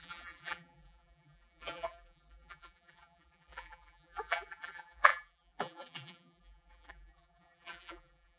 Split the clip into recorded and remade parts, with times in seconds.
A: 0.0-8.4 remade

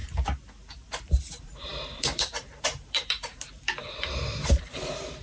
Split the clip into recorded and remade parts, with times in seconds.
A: 0.0-0.9 recorded; 0.9-5.2 remade